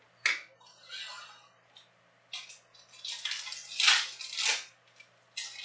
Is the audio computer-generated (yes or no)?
no